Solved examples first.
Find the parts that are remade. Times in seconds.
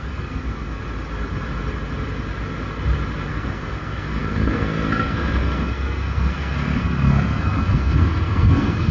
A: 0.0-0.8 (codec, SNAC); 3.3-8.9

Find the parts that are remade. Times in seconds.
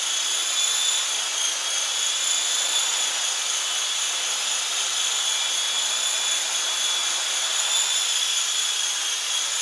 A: none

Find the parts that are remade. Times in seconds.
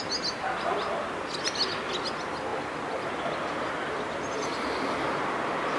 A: none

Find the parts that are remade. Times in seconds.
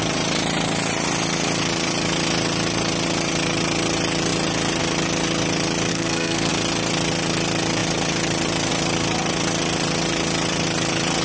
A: 5.9-6.5 (codec, SNAC)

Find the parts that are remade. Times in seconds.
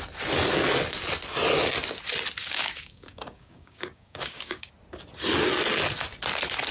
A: 2.4-4.7 (codec, DAC)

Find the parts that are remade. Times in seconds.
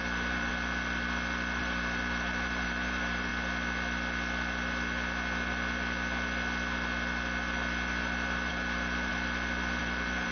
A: 0.0-0.5 (vocoder, BigVGAN v2); 1.6-3.3; 8.5-9.1; 9.8-10.3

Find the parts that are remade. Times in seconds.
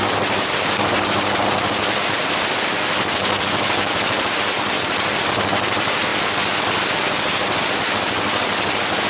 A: none